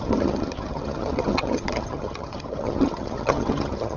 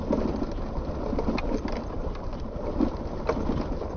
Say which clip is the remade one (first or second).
first